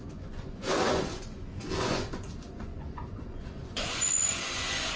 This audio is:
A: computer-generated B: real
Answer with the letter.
A